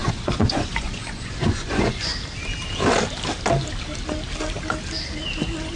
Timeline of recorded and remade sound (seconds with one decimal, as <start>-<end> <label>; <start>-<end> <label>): 0.0-2.1 remade; 2.1-5.8 recorded